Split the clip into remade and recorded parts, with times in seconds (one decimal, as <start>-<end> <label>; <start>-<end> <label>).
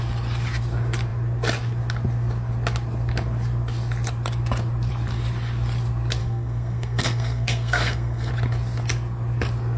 0.0-6.2 recorded; 6.2-8.3 remade; 8.3-9.8 recorded